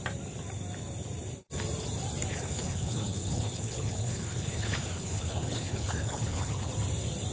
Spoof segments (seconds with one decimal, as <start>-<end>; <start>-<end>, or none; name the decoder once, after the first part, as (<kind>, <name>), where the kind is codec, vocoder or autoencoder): 2.3-6.7 (codec, HILCodec)